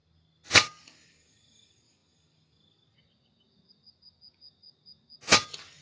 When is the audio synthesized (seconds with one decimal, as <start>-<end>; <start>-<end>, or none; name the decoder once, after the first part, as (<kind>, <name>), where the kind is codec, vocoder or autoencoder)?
none